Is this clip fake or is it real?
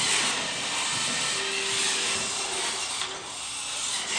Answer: real